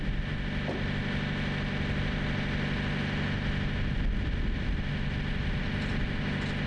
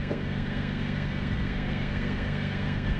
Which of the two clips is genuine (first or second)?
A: first